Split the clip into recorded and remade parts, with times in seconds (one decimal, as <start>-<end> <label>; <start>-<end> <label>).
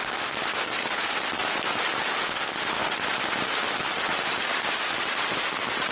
0.0-1.4 recorded; 1.4-2.0 remade; 2.0-2.8 recorded; 2.8-5.9 remade